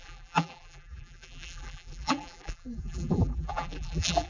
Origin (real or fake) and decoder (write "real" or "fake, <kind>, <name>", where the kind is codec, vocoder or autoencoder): fake, vocoder, BigVGAN v2